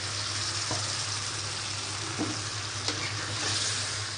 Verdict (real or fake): real